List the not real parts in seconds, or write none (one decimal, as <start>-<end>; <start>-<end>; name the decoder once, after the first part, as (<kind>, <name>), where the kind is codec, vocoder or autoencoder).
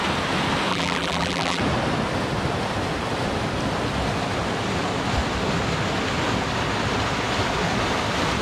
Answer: 0.7-1.6 (vocoder, BigVGAN v2)